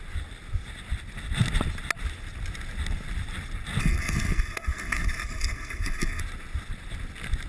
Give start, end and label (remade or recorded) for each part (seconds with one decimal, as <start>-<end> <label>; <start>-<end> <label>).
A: 0.0-3.8 recorded; 3.8-6.2 remade; 6.2-7.5 recorded